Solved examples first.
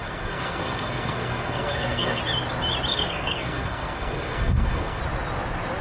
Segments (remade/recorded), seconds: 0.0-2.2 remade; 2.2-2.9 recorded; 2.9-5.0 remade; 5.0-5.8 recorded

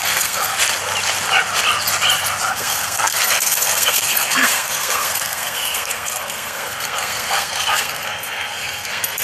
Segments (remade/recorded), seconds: 0.0-0.5 remade; 0.5-2.5 recorded; 2.5-9.2 remade

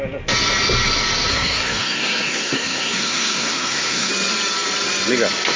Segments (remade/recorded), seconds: 0.0-1.3 recorded; 1.3-4.1 remade; 4.1-5.6 recorded

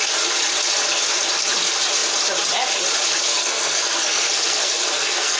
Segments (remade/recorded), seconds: 0.0-3.1 recorded; 3.1-5.4 remade

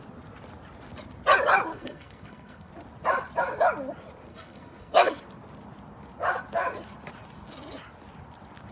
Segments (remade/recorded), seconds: 0.0-1.7 recorded; 1.7-2.7 remade; 2.7-4.3 recorded; 4.3-5.2 remade; 5.2-8.7 recorded

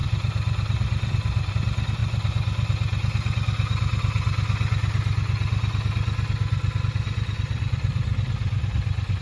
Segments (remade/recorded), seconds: 0.0-9.2 recorded